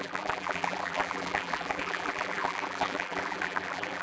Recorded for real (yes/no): no